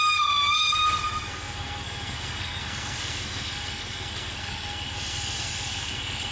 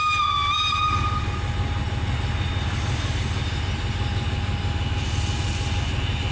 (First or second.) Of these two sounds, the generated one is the first